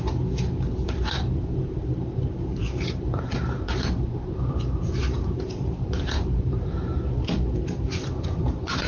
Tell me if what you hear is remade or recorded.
remade